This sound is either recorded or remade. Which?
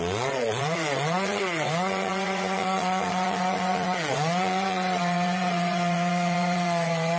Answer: remade